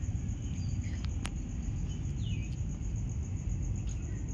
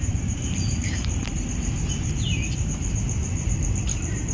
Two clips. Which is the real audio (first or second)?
first